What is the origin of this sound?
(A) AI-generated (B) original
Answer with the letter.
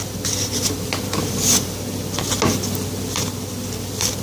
B